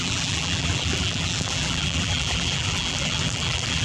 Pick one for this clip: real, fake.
fake